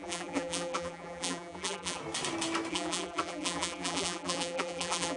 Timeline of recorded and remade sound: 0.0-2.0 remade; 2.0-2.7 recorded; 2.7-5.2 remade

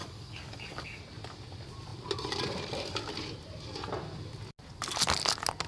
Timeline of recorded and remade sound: 0.0-1.0 remade; 1.0-5.7 recorded

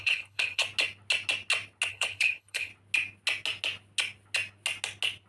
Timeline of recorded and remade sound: 0.0-0.6 remade; 0.6-1.9 recorded; 1.9-2.7 remade; 2.7-5.3 recorded

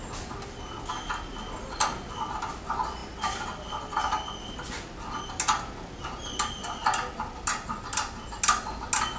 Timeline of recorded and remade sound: 0.0-9.2 recorded

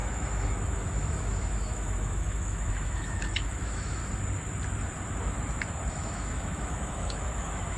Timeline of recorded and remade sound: 0.0-4.0 remade; 4.0-5.9 recorded; 5.9-7.8 remade

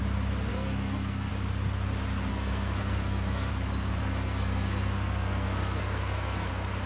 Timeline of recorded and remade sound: 0.0-0.5 recorded; 0.5-1.3 remade; 1.3-2.3 recorded; 2.3-3.5 remade; 3.5-4.0 recorded; 4.0-6.5 remade; 6.5-6.9 recorded

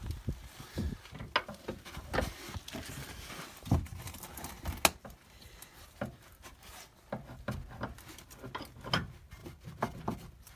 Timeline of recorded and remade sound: 0.0-10.6 recorded